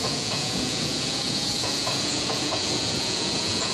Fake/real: fake